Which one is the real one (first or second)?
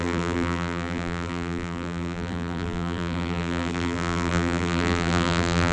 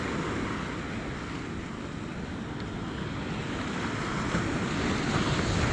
second